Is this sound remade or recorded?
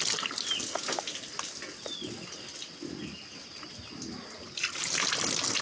recorded